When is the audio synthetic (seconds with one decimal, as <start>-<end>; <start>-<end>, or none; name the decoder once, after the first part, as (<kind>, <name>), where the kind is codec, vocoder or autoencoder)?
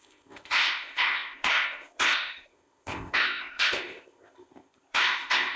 0.0-5.6 (codec, ZipCodec)